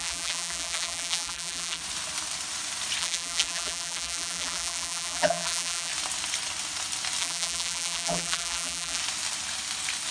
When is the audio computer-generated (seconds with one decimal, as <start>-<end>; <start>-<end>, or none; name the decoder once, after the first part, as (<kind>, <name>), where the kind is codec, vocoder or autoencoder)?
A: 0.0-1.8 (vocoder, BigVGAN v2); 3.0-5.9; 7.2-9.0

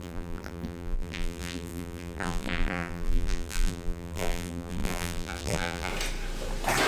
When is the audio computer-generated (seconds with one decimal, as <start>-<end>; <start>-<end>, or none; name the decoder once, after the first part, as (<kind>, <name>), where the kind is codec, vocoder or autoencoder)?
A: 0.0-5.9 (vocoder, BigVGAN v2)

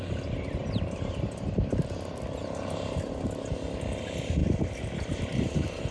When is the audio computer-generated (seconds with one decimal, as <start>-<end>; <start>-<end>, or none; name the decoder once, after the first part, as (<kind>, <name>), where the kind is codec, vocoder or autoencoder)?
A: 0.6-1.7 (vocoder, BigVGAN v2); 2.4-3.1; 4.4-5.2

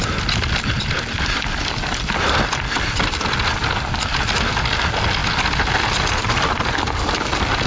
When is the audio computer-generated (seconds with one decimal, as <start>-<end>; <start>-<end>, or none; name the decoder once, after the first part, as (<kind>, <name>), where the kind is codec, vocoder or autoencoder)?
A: none